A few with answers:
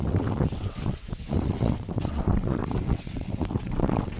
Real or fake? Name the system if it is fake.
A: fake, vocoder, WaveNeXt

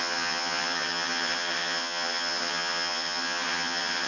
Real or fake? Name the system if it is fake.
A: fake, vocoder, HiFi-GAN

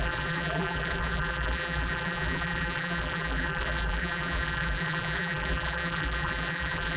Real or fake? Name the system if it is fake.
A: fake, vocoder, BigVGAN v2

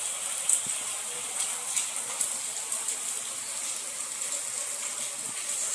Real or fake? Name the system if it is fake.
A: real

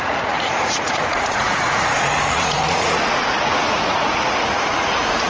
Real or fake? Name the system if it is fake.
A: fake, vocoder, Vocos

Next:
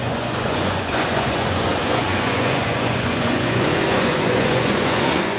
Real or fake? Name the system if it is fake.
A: fake, vocoder, Vocos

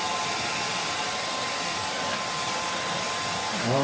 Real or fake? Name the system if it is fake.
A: real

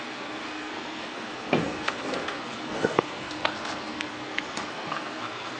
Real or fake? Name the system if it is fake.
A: fake, codec, SNAC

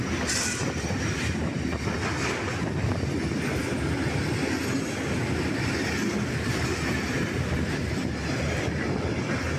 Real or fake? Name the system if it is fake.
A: real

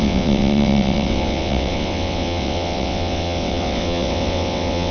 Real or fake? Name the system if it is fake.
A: fake, vocoder, WaveNeXt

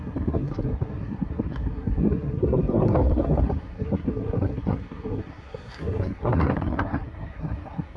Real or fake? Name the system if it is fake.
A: fake, codec, SNAC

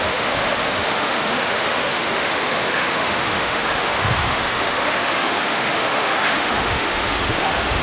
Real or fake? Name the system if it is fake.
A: fake, autoencoder, DAC-VAE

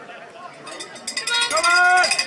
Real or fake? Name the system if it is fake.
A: real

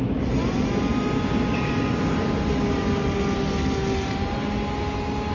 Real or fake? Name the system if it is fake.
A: real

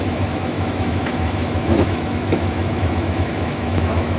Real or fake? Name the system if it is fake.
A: fake, autoencoder, DAC-VAE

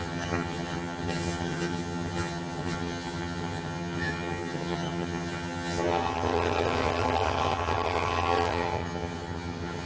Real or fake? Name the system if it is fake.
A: fake, vocoder, HiFi-GAN